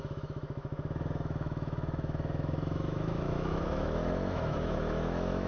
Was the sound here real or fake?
fake